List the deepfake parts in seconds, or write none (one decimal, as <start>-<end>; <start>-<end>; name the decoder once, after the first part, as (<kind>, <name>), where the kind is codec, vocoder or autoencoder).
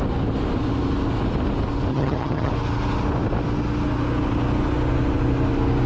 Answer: 1.9-2.5 (vocoder, HiFi-GAN)